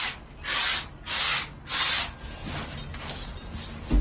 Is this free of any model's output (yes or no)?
yes